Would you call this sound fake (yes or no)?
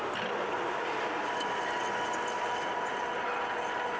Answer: no